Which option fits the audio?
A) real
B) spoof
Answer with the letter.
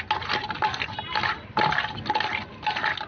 A